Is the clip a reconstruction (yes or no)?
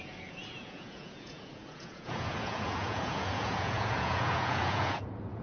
yes